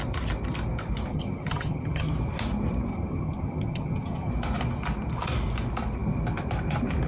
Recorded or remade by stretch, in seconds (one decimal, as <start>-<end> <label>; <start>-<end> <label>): 0.0-1.1 recorded; 1.1-2.1 remade; 2.1-2.9 recorded; 2.9-4.3 remade; 4.3-7.1 recorded